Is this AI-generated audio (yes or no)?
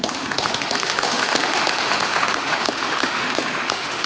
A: yes